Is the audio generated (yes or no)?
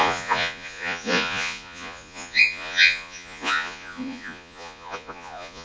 yes